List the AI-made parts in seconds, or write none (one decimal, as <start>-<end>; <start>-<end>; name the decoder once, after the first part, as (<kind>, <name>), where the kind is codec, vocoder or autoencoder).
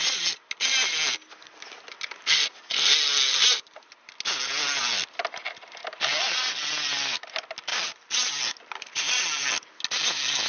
none